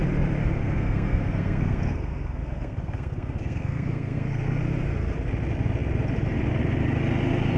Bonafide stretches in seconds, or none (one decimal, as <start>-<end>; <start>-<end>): 0.0-0.4; 4.6-7.6